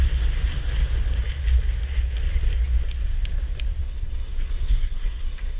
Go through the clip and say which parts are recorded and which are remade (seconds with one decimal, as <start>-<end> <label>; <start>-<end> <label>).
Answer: 0.0-3.8 recorded; 3.8-5.6 remade